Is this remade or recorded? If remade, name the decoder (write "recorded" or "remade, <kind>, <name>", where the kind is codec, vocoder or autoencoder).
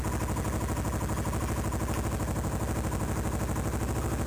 recorded